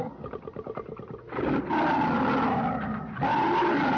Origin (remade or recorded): recorded